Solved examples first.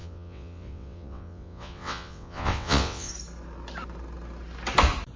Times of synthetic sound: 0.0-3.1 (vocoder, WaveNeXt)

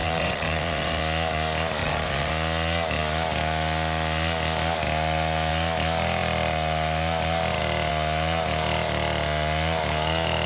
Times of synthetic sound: 0.0-1.0 (vocoder, WaveNeXt); 1.8-2.3

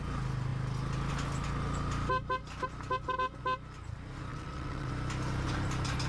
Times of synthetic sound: 4.3-4.9 (vocoder, WaveNeXt)